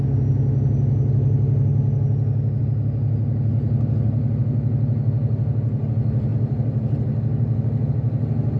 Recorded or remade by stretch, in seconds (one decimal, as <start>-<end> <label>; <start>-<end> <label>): 0.0-8.6 recorded